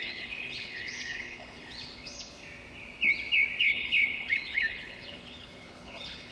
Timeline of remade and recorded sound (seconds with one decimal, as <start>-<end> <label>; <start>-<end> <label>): 0.0-2.4 remade; 2.4-3.6 recorded; 3.6-6.3 remade